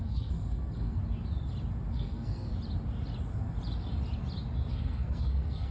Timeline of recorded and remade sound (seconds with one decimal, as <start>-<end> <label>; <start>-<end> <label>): 0.0-1.0 remade; 1.0-1.9 recorded; 1.9-2.5 remade; 2.5-4.7 recorded; 4.7-5.7 remade